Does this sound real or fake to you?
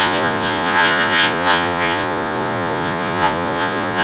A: fake